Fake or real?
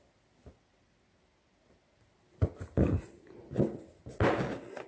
real